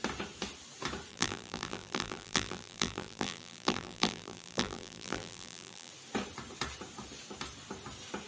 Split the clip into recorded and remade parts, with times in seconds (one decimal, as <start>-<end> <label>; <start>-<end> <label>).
0.0-1.1 recorded; 1.1-5.9 remade; 5.9-8.3 recorded